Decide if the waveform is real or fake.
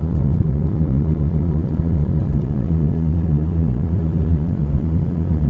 fake